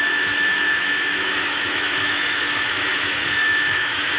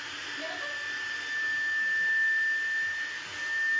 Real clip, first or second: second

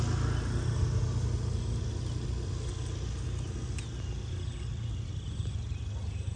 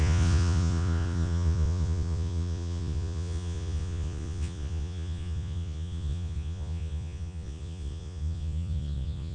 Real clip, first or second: first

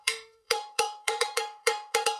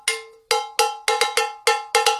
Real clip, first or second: second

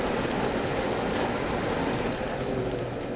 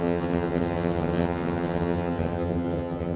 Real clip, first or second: first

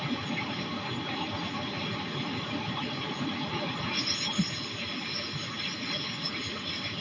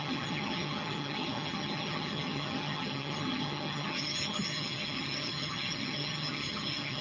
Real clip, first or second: first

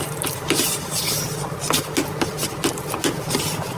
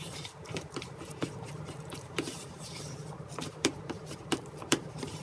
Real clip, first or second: first